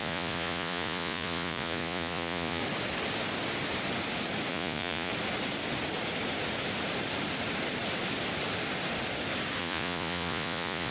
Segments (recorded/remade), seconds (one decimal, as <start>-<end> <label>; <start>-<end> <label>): 0.0-2.6 remade; 2.6-4.5 recorded; 4.5-5.1 remade; 5.1-9.6 recorded; 9.6-10.9 remade